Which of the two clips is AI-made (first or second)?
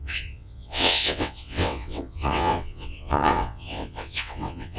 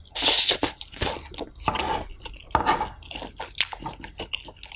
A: first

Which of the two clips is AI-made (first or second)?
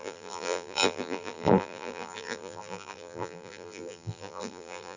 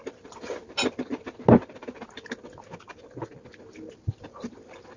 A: first